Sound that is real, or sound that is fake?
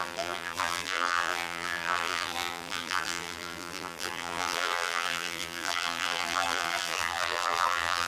fake